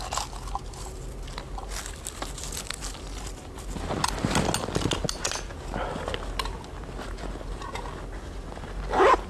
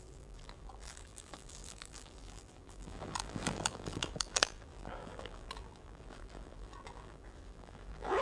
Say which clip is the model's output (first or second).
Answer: second